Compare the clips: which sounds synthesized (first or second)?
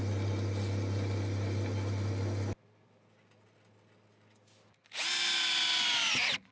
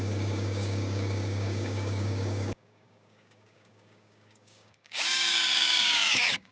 second